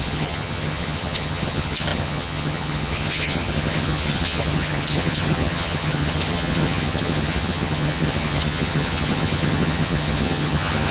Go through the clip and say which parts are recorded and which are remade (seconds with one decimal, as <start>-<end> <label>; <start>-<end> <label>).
0.0-10.9 remade